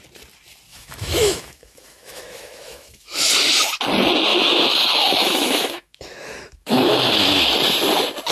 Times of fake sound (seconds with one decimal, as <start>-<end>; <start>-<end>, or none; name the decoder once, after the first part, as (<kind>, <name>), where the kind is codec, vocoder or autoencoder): 0.7-3.3 (autoencoder, DAC-VAE); 4.3-7.4